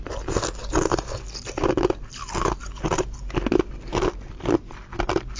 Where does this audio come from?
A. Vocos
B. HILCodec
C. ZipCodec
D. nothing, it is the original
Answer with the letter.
D